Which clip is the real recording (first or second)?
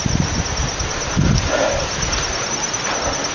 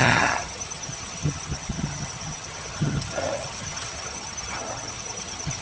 first